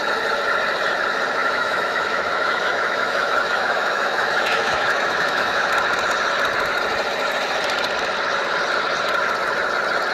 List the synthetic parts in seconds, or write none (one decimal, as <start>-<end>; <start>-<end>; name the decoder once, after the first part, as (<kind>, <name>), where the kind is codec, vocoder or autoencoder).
1.4-5.7 (autoencoder, DAC-VAE)